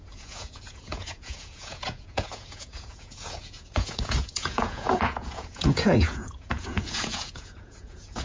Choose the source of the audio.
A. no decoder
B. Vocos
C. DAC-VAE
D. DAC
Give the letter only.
B